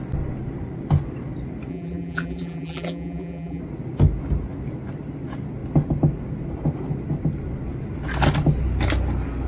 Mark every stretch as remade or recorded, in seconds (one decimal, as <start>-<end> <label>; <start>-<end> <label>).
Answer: 0.0-1.7 recorded; 1.7-3.6 remade; 3.6-9.5 recorded